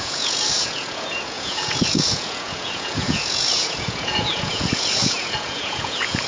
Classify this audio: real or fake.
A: fake